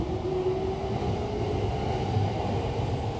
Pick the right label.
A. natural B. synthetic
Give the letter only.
A